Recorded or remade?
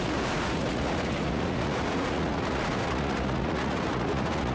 remade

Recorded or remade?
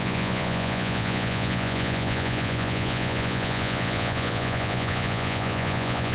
remade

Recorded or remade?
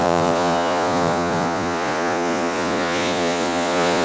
remade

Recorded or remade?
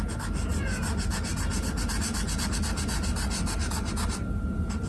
recorded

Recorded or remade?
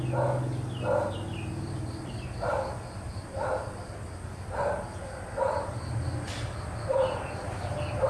recorded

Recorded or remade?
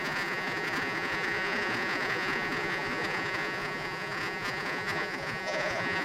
remade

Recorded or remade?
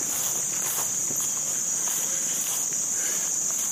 recorded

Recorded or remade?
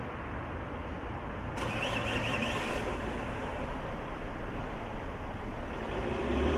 recorded